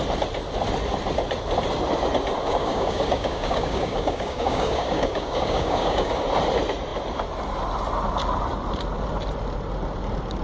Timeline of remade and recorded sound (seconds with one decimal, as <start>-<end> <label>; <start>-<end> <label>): 0.0-2.5 recorded; 2.5-6.1 remade; 6.1-10.4 recorded

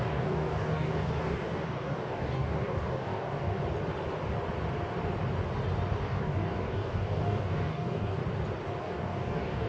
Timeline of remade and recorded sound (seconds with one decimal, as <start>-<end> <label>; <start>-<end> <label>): 0.0-3.6 remade; 3.6-6.0 recorded; 6.0-8.2 remade; 8.2-8.8 recorded; 8.8-9.7 remade

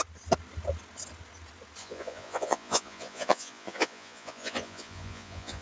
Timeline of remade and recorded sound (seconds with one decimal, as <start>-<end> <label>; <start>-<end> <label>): 0.0-1.8 recorded; 1.8-5.6 remade

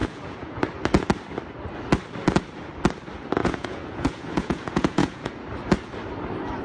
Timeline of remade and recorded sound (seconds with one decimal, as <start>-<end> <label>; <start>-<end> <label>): 0.0-0.6 remade; 0.6-3.4 recorded; 3.4-5.3 remade; 5.3-6.6 recorded

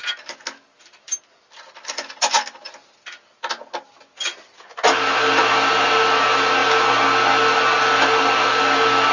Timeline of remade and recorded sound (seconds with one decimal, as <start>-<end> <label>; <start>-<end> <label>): 0.0-9.1 recorded